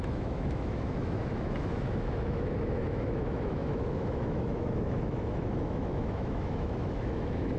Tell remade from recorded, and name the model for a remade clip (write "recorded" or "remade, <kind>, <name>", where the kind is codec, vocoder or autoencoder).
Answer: remade, autoencoder, DAC-VAE